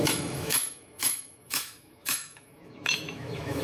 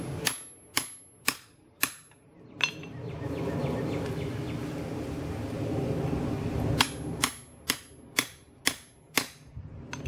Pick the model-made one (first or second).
first